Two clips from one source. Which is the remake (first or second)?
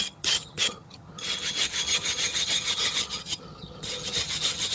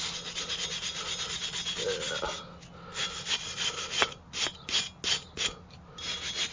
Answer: first